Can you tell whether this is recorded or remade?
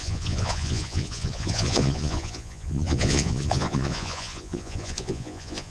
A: remade